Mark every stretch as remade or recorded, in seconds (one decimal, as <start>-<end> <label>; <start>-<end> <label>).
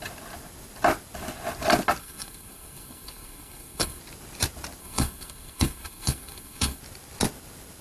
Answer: 0.0-2.0 recorded; 2.0-4.0 remade; 4.0-4.8 recorded; 4.8-6.8 remade; 6.8-7.8 recorded